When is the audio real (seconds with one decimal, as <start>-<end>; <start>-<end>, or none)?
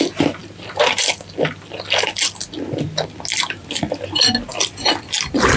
0.0-0.4; 1.1-3.3; 4.0-4.5